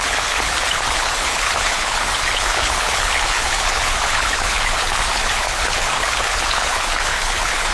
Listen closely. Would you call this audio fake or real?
fake